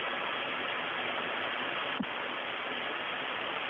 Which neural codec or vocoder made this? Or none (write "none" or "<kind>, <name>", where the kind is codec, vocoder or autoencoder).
none